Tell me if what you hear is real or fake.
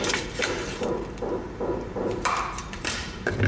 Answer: fake